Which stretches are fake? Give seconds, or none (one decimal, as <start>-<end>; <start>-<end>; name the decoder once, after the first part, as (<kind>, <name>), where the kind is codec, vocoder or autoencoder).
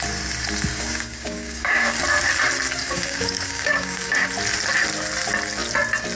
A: 0.7-2.0 (codec, DAC); 2.8-4.3